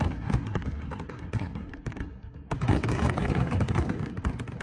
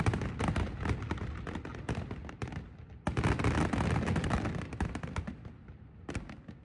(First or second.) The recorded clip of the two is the second